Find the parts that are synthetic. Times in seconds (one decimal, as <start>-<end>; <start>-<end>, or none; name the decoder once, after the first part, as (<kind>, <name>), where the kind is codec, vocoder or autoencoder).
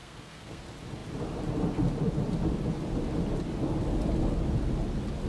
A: 0.0-0.6 (codec, SNAC)